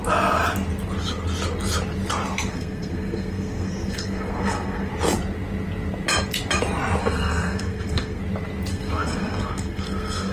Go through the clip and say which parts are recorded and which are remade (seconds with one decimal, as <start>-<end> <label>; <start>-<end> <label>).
0.0-2.5 recorded; 2.5-4.9 remade; 4.9-7.0 recorded; 7.0-8.2 remade; 8.2-8.7 recorded; 8.7-10.3 remade